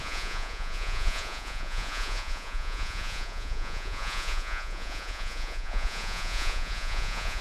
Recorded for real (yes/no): no